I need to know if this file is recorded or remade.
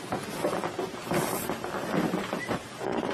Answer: recorded